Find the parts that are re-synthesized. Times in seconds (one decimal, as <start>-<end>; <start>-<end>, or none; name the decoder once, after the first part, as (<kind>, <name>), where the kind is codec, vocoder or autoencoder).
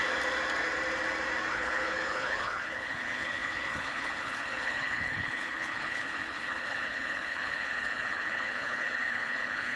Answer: 1.5-9.8 (codec, HILCodec)